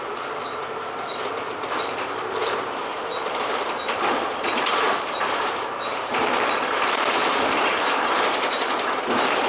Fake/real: fake